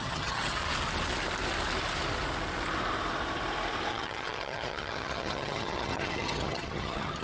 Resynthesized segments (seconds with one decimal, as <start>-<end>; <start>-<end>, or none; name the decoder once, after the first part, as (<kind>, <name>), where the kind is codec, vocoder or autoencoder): 0.0-0.6 (vocoder, HiFi-GAN); 3.9-7.2